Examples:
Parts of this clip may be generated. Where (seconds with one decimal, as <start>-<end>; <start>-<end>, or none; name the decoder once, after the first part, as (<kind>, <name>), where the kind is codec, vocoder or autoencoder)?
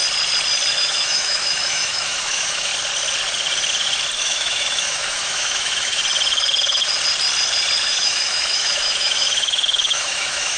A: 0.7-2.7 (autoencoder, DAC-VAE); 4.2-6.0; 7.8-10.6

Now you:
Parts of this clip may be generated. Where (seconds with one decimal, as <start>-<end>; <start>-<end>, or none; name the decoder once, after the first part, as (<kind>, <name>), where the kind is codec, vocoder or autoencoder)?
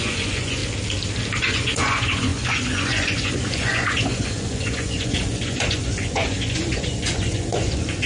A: 0.0-0.6 (vocoder, Vocos); 1.4-8.1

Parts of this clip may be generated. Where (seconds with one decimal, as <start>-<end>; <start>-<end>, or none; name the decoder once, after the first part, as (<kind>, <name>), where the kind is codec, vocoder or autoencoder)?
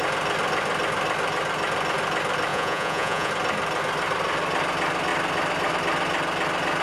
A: 2.5-3.3 (vocoder, Vocos)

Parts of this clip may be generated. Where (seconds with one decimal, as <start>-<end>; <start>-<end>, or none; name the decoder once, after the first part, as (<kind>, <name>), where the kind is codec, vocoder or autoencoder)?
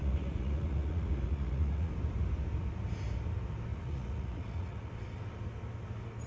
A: 0.0-1.9 (vocoder, Vocos); 3.7-4.9